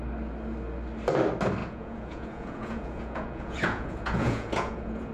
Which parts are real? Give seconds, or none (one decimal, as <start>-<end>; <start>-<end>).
0.0-1.6